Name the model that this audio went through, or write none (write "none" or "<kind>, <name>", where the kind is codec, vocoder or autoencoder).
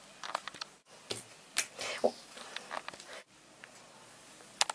none